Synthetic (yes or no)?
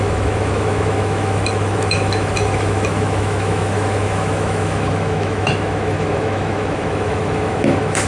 yes